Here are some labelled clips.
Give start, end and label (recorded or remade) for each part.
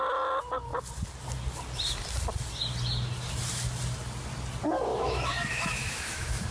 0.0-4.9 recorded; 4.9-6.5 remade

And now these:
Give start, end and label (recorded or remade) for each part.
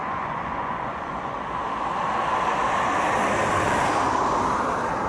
0.0-1.4 remade; 1.4-5.1 recorded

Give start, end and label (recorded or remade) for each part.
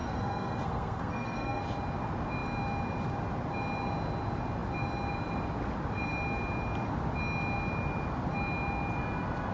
0.0-1.6 remade; 1.6-9.5 recorded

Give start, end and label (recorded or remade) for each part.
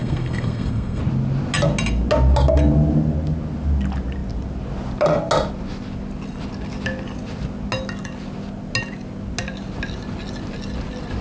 0.0-1.0 remade; 1.0-11.2 recorded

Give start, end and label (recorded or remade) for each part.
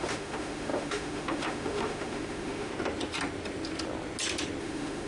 0.0-2.7 remade; 2.7-4.6 recorded; 4.6-5.1 remade